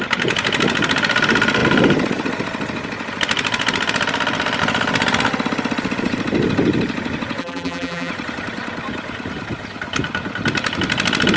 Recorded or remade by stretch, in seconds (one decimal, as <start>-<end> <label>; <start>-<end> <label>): 0.0-7.4 recorded; 7.4-8.1 remade; 8.1-11.4 recorded